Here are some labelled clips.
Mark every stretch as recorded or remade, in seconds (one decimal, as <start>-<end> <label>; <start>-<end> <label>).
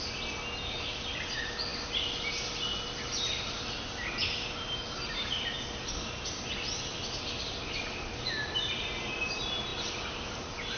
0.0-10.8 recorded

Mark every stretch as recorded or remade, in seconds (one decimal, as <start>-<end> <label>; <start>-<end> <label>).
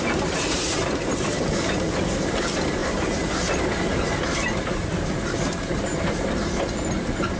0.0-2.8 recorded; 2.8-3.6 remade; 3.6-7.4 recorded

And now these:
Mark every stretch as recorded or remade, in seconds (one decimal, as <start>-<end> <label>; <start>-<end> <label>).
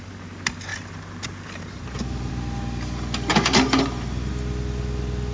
0.0-0.7 recorded; 0.7-2.3 remade; 2.3-3.3 recorded; 3.3-4.3 remade; 4.3-5.3 recorded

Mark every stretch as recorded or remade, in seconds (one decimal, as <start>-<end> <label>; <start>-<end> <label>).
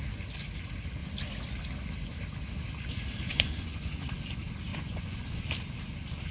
0.0-3.3 recorded; 3.3-4.0 remade; 4.0-4.7 recorded; 4.7-5.4 remade; 5.4-6.3 recorded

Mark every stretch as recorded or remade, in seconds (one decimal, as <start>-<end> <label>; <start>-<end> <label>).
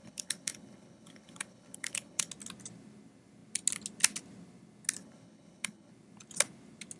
0.0-2.3 remade; 2.3-5.0 recorded; 5.0-5.9 remade; 5.9-7.0 recorded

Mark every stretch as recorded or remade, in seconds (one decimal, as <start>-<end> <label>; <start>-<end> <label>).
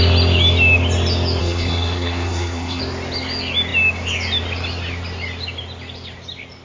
0.0-1.4 recorded; 1.4-2.8 remade; 2.8-6.6 recorded